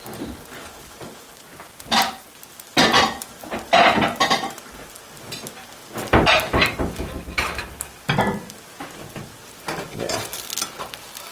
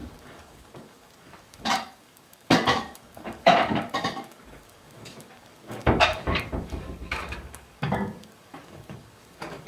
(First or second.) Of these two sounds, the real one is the first